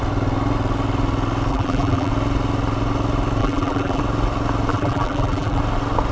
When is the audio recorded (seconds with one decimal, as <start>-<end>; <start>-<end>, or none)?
0.0-1.5; 2.1-3.4; 4.0-4.7; 5.6-6.1